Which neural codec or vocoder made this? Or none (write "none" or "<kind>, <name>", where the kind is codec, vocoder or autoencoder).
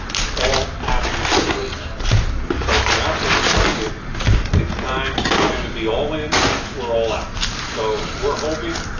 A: none